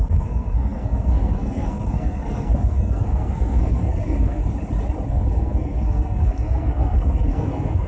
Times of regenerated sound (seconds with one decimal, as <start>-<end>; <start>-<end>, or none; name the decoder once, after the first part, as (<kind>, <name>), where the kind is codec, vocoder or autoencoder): 0.0-4.4 (codec, SNAC); 5.1-7.9